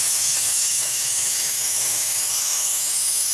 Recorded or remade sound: remade